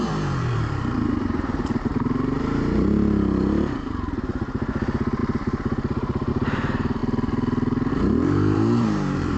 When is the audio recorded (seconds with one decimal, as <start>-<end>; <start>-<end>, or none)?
7.0-7.9